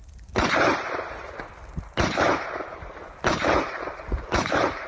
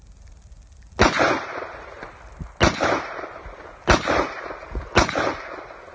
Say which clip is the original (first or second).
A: second